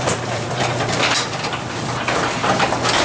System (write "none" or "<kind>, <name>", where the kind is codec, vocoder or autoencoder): vocoder, BigVGAN v2